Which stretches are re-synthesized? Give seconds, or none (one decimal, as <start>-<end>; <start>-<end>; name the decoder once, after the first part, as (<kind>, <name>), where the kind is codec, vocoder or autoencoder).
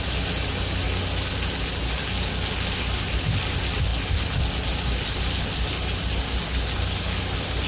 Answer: none